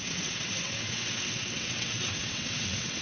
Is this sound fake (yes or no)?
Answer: yes